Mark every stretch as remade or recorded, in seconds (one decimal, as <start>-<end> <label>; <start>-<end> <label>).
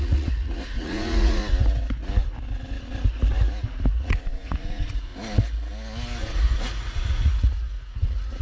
0.0-1.4 remade; 1.4-3.9 recorded; 3.9-5.1 remade; 5.1-6.2 recorded; 6.2-8.4 remade